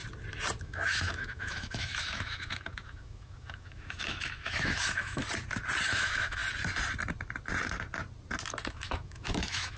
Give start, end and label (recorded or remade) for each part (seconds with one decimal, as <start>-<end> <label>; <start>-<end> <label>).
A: 0.0-0.6 recorded; 0.6-5.2 remade; 5.2-5.9 recorded; 5.9-6.4 remade; 6.4-8.7 recorded; 8.7-9.8 remade